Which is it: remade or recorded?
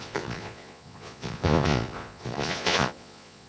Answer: remade